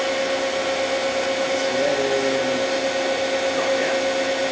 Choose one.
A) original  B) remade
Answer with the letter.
A